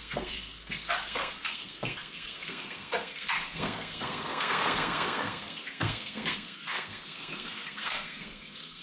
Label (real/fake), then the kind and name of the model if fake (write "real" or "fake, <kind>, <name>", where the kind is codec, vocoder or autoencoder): fake, codec, SNAC